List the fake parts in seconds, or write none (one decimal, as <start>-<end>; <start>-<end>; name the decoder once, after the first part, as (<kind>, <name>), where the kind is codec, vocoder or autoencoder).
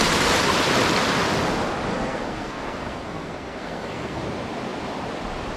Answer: 1.9-4.2 (codec, SNAC)